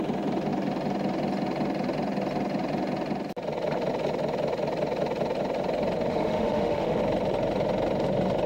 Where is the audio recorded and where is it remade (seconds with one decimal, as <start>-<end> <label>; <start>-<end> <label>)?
0.0-6.1 recorded; 6.1-7.0 remade; 7.0-8.5 recorded

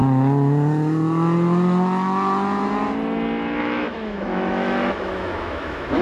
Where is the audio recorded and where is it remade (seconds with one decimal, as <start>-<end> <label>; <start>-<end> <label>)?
0.0-3.6 recorded; 3.6-6.0 remade

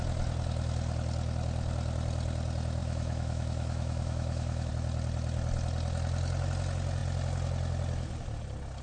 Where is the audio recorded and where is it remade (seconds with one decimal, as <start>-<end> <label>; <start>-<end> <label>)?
0.0-2.8 recorded; 2.8-4.7 remade; 4.7-8.8 recorded

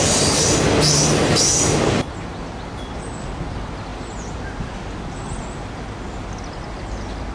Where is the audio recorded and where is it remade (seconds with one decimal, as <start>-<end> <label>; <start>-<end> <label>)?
0.0-7.3 recorded

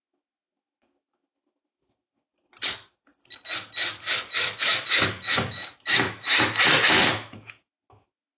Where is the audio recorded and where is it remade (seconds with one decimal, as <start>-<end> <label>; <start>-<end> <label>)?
0.0-2.3 remade; 2.3-4.6 recorded; 4.6-6.3 remade; 6.3-7.1 recorded; 7.1-8.4 remade